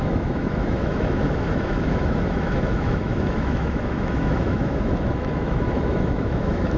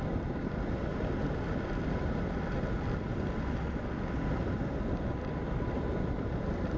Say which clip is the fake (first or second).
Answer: first